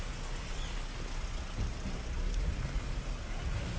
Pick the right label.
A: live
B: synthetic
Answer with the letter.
A